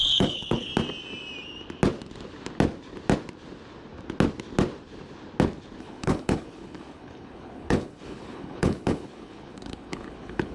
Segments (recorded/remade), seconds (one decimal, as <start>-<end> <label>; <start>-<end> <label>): 0.0-0.7 remade; 0.7-5.8 recorded; 5.8-10.5 remade